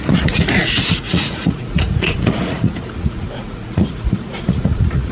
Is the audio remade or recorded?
remade